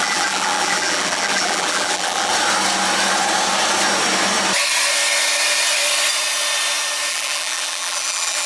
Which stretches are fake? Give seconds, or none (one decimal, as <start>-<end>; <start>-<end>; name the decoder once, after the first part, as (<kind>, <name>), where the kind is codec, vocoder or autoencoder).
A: 0.0-2.3 (vocoder, BigVGAN v2); 7.1-8.5